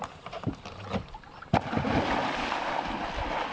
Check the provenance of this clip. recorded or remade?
recorded